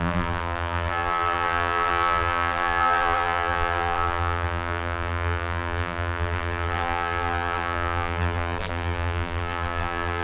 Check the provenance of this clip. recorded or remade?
remade